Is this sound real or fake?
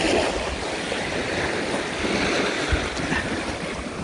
real